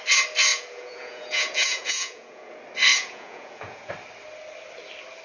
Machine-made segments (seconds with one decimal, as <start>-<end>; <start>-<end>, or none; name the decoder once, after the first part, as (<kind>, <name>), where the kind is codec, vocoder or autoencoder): 0.5-2.5 (vocoder, Vocos); 2.9-3.9